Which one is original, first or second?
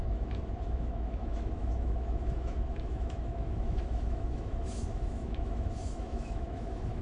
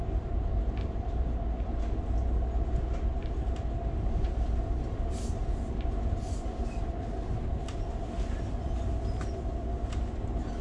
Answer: second